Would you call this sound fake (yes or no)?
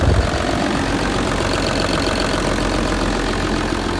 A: no